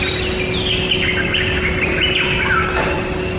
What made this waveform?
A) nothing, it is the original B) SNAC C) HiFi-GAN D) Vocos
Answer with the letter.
A